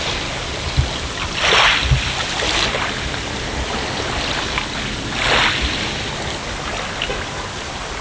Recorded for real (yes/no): yes